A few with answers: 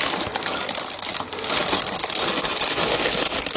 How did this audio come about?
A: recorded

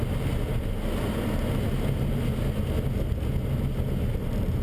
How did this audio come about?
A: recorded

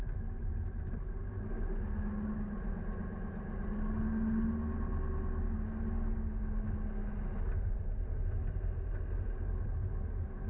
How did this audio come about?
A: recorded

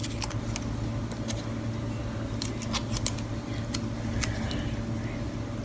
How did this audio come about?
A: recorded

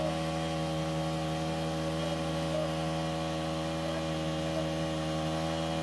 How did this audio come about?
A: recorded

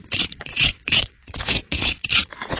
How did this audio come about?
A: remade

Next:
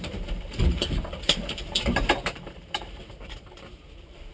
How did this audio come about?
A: remade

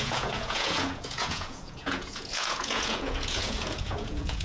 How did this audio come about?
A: remade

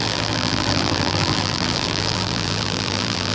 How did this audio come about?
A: remade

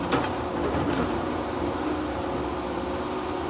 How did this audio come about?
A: recorded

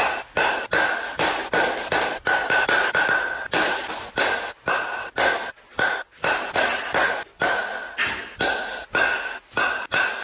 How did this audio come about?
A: recorded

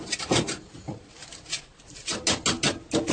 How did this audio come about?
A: recorded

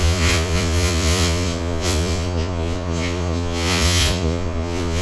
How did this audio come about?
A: remade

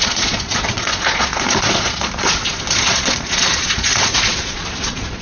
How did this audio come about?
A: remade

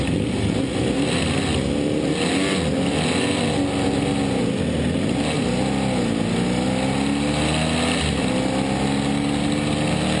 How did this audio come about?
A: recorded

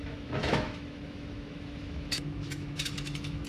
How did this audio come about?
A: remade